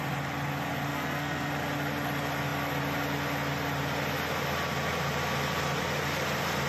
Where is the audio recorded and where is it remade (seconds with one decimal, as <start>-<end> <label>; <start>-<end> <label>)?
0.0-0.9 recorded; 0.9-1.5 remade; 1.5-6.7 recorded